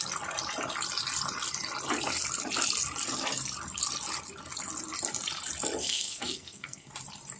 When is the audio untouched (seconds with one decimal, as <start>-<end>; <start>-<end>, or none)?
0.0-5.8; 6.9-7.4

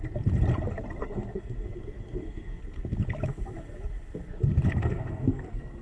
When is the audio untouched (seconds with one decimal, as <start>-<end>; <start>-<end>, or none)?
0.0-1.0; 2.6-4.8

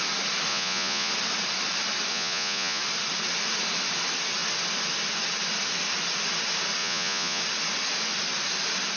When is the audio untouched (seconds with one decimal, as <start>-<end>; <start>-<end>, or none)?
0.0-0.5; 1.1-2.1; 2.8-6.8; 7.4-9.0

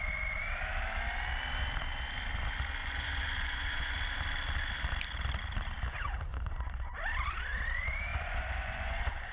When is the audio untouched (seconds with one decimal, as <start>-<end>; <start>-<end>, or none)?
0.0-2.8; 4.0-6.3; 6.9-8.1

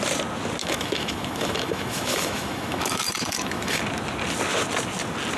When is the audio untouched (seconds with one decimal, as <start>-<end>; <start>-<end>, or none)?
0.0-0.6; 3.8-5.4

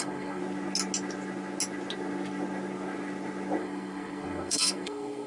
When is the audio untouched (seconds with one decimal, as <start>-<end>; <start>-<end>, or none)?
0.4-3.6